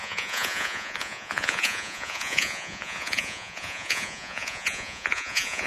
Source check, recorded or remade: remade